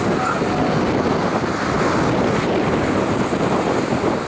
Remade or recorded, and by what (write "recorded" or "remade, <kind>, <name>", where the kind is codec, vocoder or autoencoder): recorded